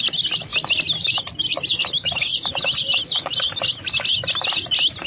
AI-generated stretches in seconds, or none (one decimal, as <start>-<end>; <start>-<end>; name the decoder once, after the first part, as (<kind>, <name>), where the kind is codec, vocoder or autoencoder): none